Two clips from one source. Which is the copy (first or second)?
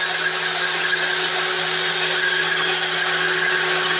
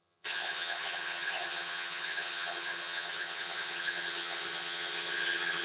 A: second